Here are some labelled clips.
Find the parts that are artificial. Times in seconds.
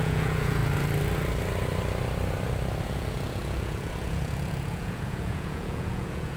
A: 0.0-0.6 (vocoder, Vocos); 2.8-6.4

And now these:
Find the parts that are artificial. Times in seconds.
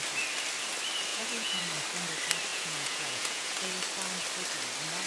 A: 1.1-1.6 (vocoder, Vocos); 2.5-3.7